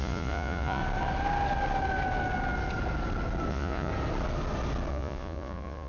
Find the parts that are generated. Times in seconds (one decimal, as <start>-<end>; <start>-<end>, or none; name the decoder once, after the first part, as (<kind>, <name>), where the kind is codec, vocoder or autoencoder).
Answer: 0.0-0.8 (vocoder, Vocos); 3.5-3.9; 4.9-5.9

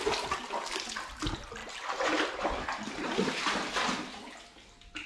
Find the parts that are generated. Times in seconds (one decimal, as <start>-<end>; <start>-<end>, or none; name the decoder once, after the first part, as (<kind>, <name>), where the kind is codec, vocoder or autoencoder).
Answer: none

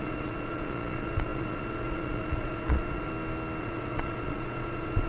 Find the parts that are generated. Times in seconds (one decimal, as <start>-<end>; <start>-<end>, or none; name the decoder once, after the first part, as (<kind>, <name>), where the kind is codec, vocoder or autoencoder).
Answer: 0.0-3.1 (vocoder, Vocos); 3.6-5.1

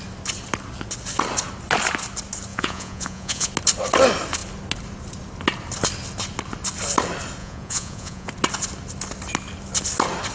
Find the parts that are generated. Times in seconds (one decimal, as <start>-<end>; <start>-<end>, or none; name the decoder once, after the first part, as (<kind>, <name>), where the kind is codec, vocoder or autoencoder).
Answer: 2.5-3.5 (vocoder, Vocos); 7.4-8.3

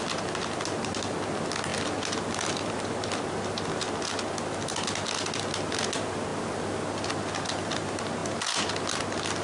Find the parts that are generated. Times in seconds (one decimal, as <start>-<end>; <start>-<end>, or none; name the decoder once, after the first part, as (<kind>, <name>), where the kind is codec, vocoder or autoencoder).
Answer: none